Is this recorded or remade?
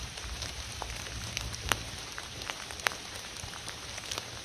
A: remade